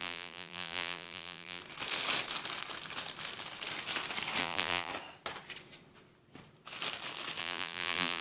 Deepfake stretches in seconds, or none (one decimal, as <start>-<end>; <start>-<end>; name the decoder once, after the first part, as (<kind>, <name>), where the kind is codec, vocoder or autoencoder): 0.0-1.6 (vocoder, BigVGAN v2); 4.4-4.9; 7.4-8.2